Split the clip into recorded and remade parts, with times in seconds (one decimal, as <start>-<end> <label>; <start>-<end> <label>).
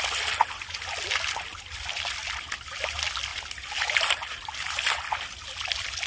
0.0-3.3 recorded; 3.3-4.5 remade; 4.5-6.1 recorded